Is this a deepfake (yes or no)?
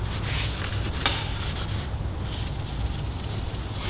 no